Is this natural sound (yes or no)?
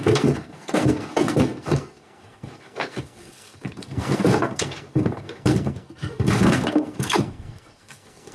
no